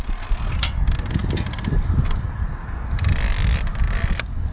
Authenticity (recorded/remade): recorded